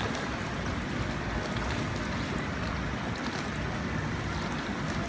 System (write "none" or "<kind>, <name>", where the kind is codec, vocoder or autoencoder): none